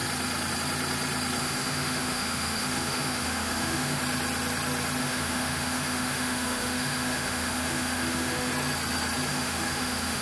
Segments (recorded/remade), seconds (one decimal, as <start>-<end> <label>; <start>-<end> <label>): 0.0-1.4 recorded; 1.4-4.0 remade; 4.0-5.0 recorded; 5.0-8.5 remade; 8.5-9.3 recorded; 9.3-10.2 remade